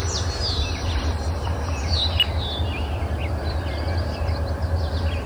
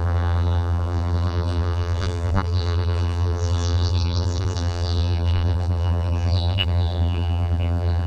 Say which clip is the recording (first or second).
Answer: first